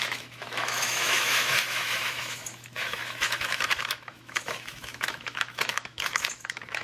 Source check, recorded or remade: remade